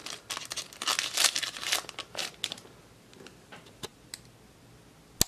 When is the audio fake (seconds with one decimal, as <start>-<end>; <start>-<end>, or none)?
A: none